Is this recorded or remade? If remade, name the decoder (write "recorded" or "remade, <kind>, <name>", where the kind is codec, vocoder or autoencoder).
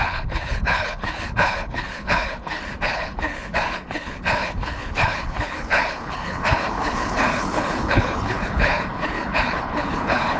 remade, codec, HILCodec